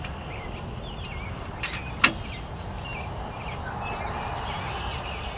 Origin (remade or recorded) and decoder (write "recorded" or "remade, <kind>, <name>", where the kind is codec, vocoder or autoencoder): recorded